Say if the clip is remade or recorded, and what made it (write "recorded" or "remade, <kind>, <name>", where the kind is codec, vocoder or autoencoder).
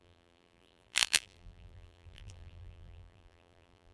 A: remade, vocoder, BigVGAN v2